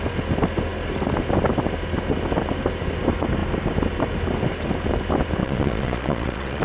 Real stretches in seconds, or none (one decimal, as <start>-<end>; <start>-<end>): 0.0-5.4